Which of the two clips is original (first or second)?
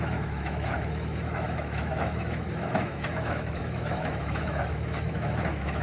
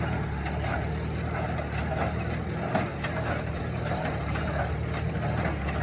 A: second